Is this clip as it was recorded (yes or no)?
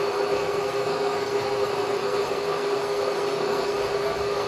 no